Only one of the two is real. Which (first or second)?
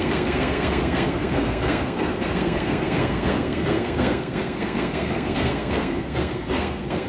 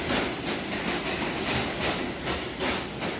second